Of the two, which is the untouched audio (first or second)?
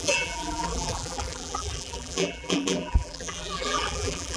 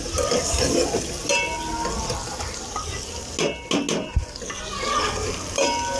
second